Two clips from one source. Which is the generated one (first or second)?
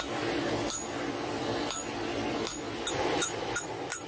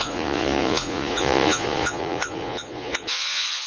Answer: second